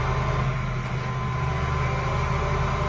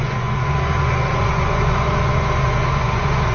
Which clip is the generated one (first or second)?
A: second